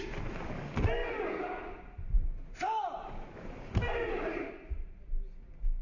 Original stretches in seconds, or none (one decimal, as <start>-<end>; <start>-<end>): 0.0-1.0; 4.5-5.8